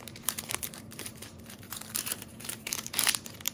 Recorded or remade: remade